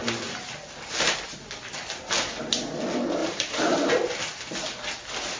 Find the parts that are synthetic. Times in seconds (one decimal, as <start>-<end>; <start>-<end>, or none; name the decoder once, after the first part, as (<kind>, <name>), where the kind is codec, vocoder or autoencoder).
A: 3.2-3.9 (vocoder, BigVGAN v2)